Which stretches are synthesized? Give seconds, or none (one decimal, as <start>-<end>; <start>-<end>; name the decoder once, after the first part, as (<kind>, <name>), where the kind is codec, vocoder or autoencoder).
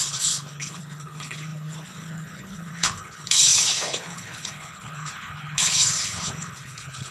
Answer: 0.0-7.1 (codec, HILCodec)